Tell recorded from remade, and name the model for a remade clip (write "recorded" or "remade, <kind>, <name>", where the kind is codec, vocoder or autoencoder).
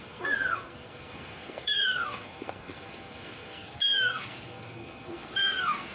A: remade, codec, SNAC